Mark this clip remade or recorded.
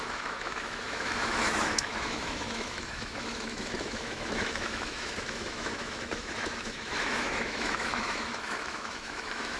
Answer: remade